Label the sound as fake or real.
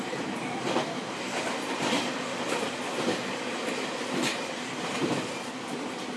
real